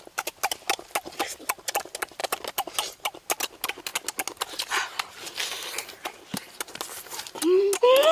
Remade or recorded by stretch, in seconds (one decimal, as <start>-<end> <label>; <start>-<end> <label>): 0.0-8.1 recorded